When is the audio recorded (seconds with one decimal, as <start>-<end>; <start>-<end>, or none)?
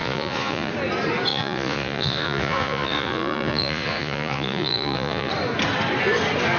0.7-1.3; 5.3-6.6